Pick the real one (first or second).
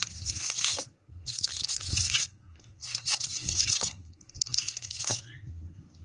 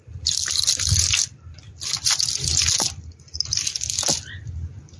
second